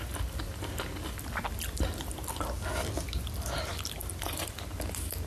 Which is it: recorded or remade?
recorded